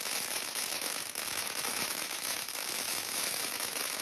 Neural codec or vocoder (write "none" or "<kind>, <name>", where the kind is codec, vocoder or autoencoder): autoencoder, DAC-VAE